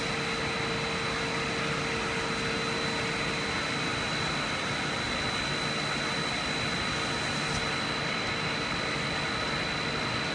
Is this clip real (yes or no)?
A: yes